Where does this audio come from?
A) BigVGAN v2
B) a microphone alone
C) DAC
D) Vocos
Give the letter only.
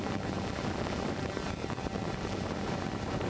A